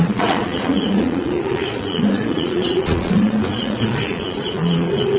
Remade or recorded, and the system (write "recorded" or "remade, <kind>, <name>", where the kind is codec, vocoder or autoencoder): remade, vocoder, Vocos